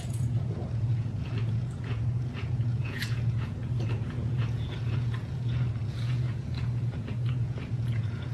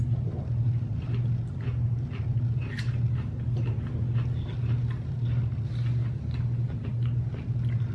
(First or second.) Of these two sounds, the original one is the second